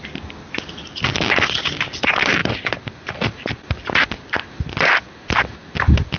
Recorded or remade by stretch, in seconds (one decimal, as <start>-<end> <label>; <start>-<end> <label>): 0.0-2.4 recorded; 2.4-3.6 remade; 3.6-6.2 recorded